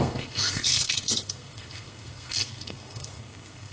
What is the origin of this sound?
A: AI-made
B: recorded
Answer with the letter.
A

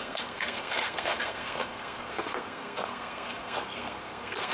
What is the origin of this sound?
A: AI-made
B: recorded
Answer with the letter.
A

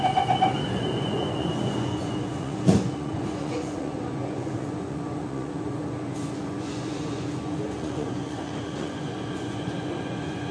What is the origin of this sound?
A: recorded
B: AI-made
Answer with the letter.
B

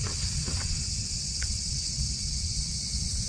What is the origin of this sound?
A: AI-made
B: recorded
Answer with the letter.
A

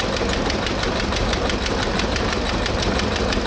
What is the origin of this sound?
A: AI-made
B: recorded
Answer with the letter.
B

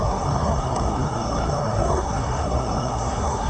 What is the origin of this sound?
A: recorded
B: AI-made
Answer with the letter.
B